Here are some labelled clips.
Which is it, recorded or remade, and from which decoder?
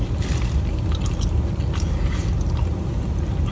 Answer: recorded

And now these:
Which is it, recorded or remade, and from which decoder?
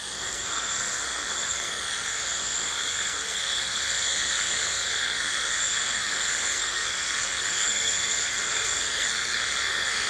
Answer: remade, codec, SNAC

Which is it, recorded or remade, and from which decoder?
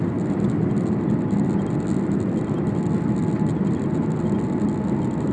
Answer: recorded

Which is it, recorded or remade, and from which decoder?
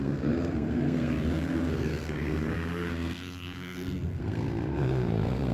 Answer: remade, codec, SNAC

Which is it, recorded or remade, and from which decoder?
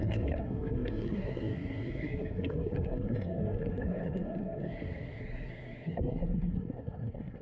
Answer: remade, codec, SNAC